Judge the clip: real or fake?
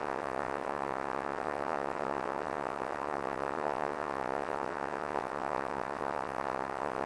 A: fake